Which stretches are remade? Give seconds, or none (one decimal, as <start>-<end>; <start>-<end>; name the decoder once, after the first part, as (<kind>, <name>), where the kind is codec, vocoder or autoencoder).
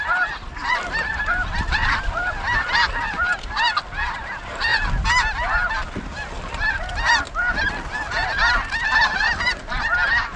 0.0-4.7 (vocoder, BigVGAN v2); 7.7-10.4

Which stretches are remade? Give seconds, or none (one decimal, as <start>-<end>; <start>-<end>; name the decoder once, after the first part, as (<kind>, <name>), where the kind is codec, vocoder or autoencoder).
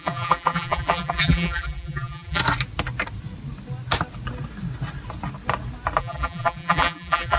0.0-2.4 (vocoder, BigVGAN v2); 6.0-7.4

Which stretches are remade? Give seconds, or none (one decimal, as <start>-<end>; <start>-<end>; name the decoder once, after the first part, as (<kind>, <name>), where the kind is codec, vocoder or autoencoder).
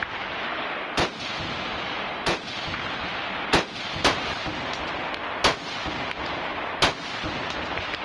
0.5-2.4 (vocoder, BigVGAN v2)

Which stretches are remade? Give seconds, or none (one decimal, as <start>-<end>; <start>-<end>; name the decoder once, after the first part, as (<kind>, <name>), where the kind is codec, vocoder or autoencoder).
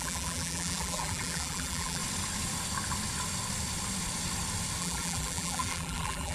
0.0-2.0 (vocoder, BigVGAN v2); 4.8-6.3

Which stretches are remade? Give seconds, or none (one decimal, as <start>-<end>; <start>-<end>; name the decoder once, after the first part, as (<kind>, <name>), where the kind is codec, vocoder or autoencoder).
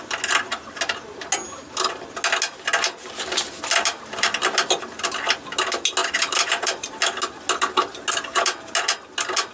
6.0-6.5 (vocoder, BigVGAN v2)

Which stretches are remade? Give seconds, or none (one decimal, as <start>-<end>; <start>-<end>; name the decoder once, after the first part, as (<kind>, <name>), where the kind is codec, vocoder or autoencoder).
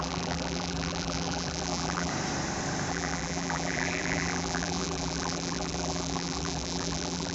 0.0-2.1 (vocoder, BigVGAN v2); 2.9-7.3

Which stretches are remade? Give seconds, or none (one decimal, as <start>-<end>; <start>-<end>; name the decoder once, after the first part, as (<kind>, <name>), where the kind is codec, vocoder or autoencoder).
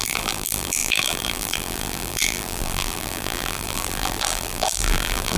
0.0-5.4 (vocoder, BigVGAN v2)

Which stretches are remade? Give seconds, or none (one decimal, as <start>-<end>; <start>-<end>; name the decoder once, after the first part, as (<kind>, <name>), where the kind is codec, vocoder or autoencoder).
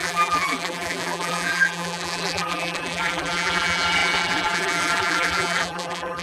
0.0-6.2 (vocoder, BigVGAN v2)